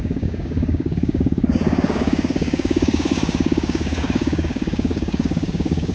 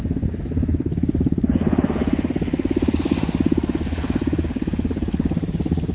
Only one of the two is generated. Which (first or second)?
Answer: first